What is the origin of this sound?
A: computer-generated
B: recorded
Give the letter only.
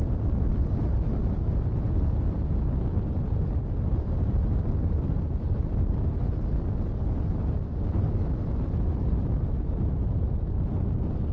B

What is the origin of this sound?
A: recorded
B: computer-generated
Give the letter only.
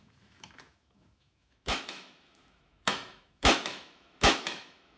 B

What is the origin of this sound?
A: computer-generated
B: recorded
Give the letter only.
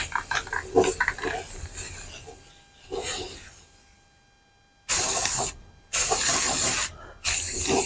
B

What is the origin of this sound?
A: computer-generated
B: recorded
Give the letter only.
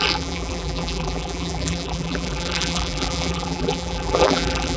A